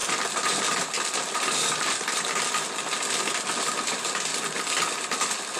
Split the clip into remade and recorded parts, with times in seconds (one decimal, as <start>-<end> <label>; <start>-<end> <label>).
0.0-4.3 remade; 4.3-5.6 recorded